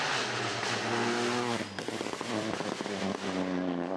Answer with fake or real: real